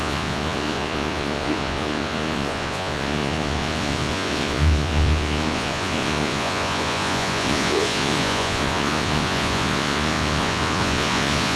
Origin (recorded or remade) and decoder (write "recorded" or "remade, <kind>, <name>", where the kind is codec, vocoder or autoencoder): remade, vocoder, Vocos